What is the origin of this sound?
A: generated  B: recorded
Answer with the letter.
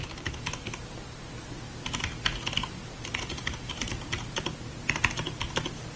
B